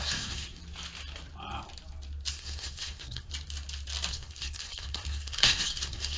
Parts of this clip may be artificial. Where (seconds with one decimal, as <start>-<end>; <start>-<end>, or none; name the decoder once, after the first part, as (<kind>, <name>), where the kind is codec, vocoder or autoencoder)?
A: 0.0-0.6 (codec, SNAC); 2.3-3.3; 4.1-6.2